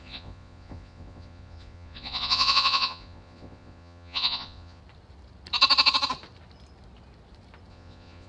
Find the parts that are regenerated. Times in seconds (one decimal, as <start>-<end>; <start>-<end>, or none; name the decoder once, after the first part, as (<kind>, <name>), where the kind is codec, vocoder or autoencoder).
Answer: 0.0-4.8 (vocoder, Vocos); 7.7-8.3